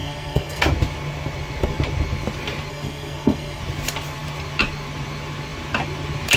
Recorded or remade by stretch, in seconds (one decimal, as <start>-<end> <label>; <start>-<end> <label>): 0.0-0.6 remade; 0.6-2.7 recorded; 2.7-3.6 remade; 3.6-6.4 recorded

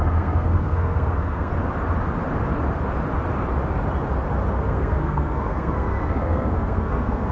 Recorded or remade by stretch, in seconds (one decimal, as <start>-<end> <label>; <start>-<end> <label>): 0.0-1.5 remade; 1.5-4.5 recorded; 4.5-7.3 remade

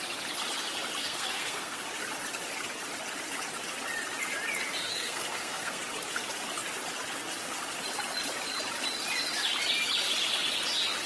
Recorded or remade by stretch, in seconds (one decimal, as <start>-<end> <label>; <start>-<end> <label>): 0.0-1.0 recorded; 1.0-1.8 remade; 1.8-4.9 recorded; 4.9-5.8 remade; 5.8-11.1 recorded

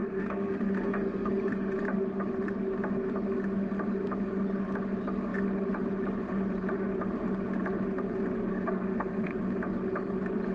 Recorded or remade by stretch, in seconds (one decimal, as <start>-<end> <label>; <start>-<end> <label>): 0.0-1.3 remade; 1.3-8.5 recorded; 8.5-9.3 remade; 9.3-10.5 recorded

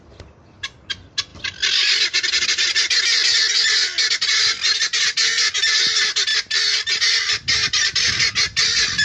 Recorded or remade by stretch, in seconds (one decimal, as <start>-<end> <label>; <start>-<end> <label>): 0.0-9.0 recorded

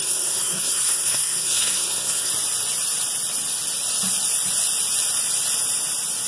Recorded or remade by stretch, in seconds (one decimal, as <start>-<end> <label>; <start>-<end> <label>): 0.0-2.3 remade; 2.3-6.3 recorded

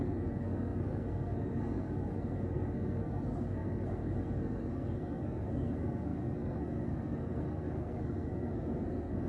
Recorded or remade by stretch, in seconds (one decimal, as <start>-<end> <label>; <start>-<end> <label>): 0.0-9.3 remade

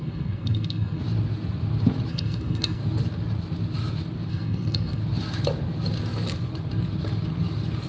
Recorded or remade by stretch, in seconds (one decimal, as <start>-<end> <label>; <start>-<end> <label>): 0.0-1.0 remade; 1.0-2.1 recorded; 2.1-2.8 remade; 2.8-4.3 recorded; 4.3-5.0 remade; 5.0-7.9 recorded